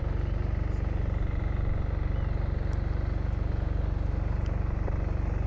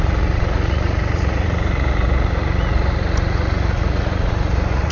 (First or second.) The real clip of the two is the first